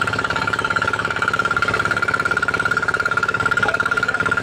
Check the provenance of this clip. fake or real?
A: fake